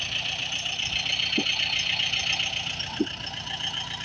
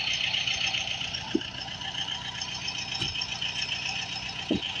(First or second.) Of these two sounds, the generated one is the second